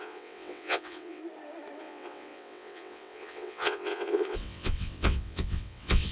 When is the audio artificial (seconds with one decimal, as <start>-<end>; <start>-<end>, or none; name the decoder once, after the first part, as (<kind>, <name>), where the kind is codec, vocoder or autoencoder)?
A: 0.0-1.2 (vocoder, WaveNeXt); 1.8-6.1